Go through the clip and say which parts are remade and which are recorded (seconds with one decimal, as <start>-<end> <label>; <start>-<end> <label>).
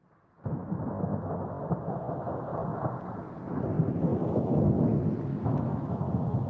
0.0-5.3 recorded; 5.3-6.0 remade; 6.0-6.5 recorded